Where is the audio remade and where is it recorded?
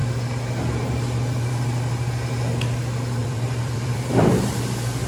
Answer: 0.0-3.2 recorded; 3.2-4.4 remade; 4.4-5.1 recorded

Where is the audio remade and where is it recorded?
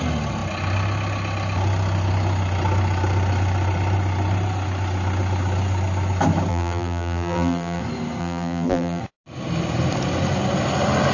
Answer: 0.0-6.5 recorded; 6.5-7.8 remade; 7.8-8.2 recorded; 8.2-9.0 remade; 9.0-11.1 recorded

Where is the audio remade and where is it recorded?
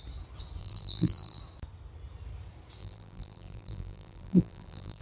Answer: 0.0-0.6 recorded; 0.6-1.4 remade; 1.4-2.8 recorded; 2.8-5.0 remade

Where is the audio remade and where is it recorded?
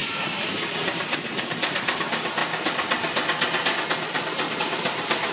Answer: 0.0-2.4 remade; 2.4-4.6 recorded; 4.6-5.3 remade